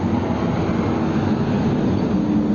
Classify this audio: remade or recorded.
recorded